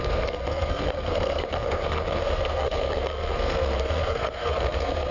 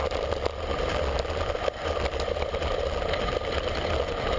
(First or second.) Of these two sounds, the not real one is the first